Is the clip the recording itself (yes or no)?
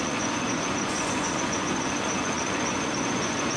no